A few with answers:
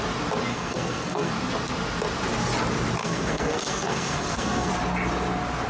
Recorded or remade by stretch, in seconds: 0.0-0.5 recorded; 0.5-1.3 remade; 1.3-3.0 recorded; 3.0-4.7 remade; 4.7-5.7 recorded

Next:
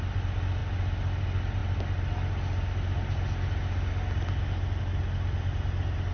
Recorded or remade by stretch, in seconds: 0.0-6.1 recorded